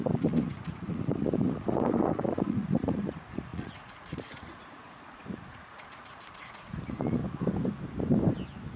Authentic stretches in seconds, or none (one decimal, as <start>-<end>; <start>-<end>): 7.2-8.8